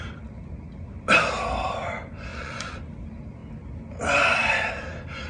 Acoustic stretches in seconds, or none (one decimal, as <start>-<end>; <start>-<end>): 0.0-2.3; 2.8-5.3